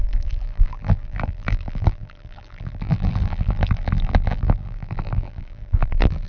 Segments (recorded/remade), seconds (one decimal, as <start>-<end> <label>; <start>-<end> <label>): 0.0-6.3 remade